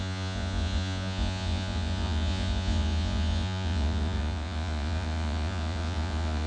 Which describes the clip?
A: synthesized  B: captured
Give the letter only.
A